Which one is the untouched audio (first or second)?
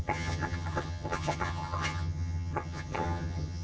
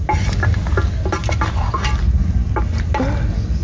second